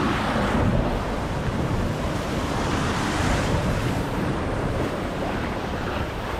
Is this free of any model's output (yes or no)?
no